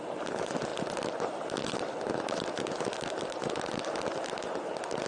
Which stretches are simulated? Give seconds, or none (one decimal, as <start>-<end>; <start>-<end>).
0.7-3.8